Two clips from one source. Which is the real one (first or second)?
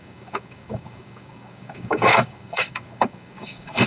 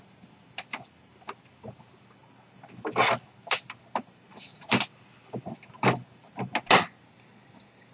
second